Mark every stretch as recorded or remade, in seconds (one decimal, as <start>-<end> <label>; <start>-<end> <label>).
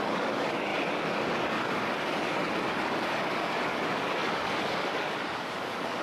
0.0-6.0 remade